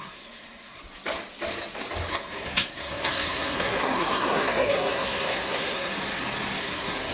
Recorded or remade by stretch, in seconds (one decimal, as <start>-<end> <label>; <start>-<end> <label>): 0.0-0.8 remade; 0.8-2.1 recorded; 2.1-5.9 remade; 5.9-6.6 recorded; 6.6-7.1 remade